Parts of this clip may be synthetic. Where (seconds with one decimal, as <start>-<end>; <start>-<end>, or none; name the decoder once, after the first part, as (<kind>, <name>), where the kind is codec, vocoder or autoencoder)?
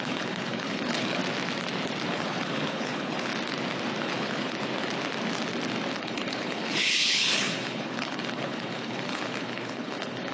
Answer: 0.0-1.2 (codec, HILCodec); 2.1-3.3; 4.0-4.6; 6.0-10.3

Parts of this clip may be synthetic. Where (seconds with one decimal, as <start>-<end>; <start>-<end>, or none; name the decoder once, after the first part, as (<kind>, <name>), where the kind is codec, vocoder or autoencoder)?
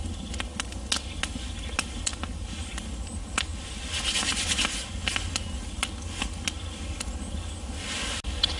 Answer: none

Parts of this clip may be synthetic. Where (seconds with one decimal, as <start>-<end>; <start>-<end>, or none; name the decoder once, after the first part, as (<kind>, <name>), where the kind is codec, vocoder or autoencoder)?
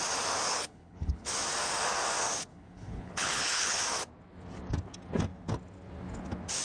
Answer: 0.5-1.3 (codec, HILCodec); 2.5-3.8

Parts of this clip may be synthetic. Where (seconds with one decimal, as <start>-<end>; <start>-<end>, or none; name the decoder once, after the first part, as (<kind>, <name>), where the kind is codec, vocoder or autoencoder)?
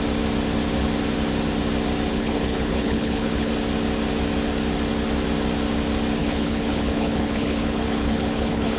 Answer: 2.1-3.5 (codec, HILCodec); 6.2-8.8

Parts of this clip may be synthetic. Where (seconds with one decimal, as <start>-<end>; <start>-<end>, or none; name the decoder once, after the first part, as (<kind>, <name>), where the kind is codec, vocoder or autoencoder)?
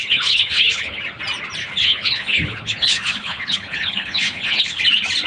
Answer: 0.0-1.0 (codec, HILCodec); 1.6-4.8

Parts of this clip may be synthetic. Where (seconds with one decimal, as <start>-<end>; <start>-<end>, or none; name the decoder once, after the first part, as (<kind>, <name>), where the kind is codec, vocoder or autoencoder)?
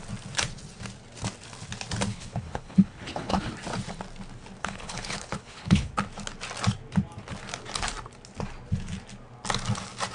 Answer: 2.1-3.5 (codec, HILCodec); 4.6-5.9